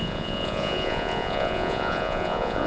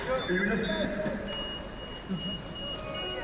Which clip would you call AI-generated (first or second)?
first